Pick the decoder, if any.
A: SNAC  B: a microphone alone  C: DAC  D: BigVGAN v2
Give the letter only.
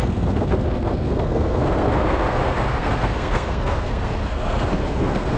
A